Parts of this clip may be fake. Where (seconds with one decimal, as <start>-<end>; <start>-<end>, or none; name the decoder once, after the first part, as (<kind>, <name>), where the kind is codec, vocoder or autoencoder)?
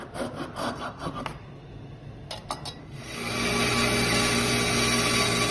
0.6-1.1 (codec, SNAC); 2.8-3.3